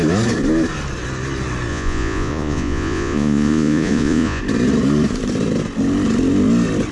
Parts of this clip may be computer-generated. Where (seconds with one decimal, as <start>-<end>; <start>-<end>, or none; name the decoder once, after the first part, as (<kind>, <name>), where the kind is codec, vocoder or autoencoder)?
1.7-4.4 (vocoder, Vocos)